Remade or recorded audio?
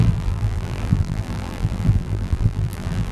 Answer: remade